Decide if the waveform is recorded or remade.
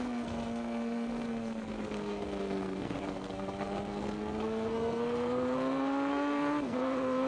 remade